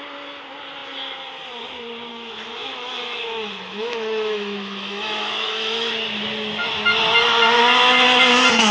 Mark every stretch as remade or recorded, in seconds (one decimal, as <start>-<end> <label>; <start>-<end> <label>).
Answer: 0.0-2.1 recorded; 2.1-5.9 remade; 5.9-8.7 recorded